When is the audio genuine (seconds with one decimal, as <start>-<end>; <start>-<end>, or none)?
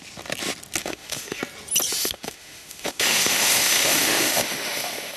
0.0-0.8; 1.4-2.0